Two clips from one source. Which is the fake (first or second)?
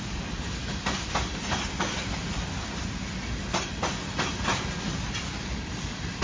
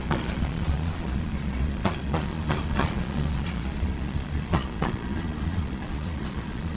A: second